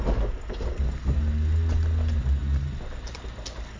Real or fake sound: real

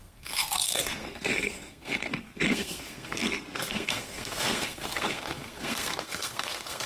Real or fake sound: fake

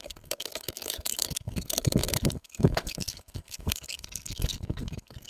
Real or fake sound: fake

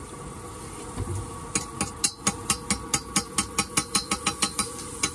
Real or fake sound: real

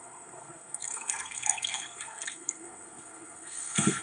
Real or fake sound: fake